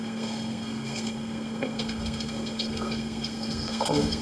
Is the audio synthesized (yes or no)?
yes